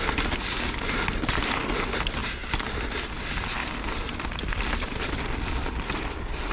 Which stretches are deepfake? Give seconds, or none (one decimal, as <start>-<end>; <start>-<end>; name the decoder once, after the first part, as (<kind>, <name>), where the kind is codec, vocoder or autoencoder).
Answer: none